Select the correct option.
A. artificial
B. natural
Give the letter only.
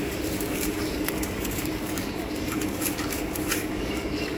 A